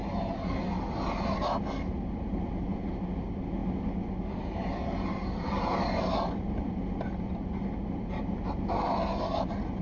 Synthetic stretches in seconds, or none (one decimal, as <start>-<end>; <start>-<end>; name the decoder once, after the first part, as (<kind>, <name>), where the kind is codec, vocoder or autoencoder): none